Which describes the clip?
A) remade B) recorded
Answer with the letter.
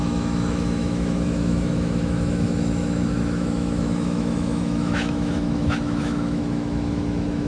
A